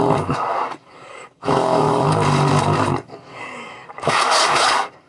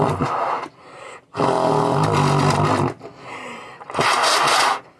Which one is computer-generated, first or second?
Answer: first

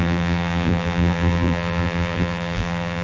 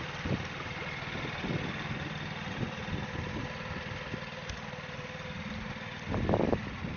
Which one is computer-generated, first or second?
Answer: first